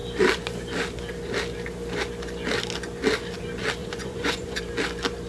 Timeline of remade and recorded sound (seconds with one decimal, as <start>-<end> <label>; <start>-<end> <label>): 0.0-3.8 recorded; 3.8-4.6 remade; 4.6-5.3 recorded

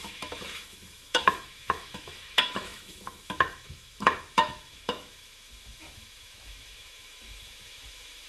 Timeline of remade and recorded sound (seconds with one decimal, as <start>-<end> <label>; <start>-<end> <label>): 0.0-8.3 remade

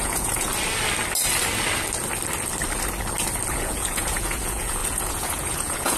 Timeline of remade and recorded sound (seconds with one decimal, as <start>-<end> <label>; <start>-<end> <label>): 0.0-0.5 remade; 0.5-3.5 recorded; 3.5-6.0 remade

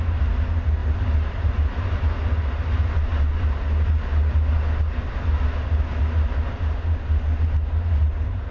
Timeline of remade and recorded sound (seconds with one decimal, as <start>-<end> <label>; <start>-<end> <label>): 0.0-8.5 recorded

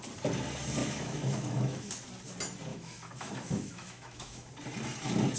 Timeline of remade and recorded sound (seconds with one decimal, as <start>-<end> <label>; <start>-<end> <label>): 0.0-0.8 recorded; 0.8-1.9 remade; 1.9-2.7 recorded; 2.7-4.5 remade; 4.5-5.4 recorded

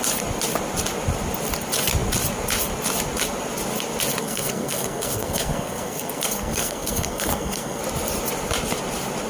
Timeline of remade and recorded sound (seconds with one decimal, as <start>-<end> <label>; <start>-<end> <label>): 0.0-4.2 recorded; 4.2-7.8 remade; 7.8-9.3 recorded

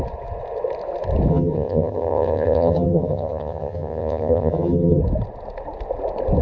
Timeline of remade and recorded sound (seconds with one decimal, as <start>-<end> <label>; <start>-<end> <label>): 0.0-1.3 recorded; 1.3-5.0 remade; 5.0-6.4 recorded

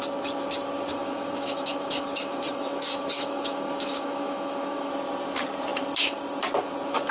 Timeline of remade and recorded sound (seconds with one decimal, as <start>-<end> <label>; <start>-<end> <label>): 0.0-0.9 recorded; 0.9-4.9 remade; 4.9-7.1 recorded